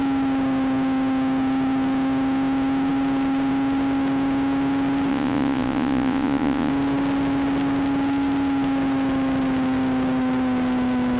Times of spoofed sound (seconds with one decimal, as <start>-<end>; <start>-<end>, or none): 5.1-6.7